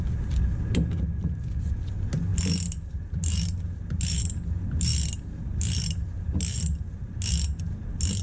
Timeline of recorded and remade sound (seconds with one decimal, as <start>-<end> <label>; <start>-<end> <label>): 0.0-8.2 recorded